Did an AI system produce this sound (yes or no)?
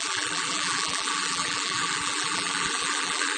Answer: yes